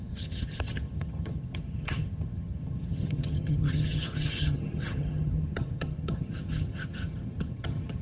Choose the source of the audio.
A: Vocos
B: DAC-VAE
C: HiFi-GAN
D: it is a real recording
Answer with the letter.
C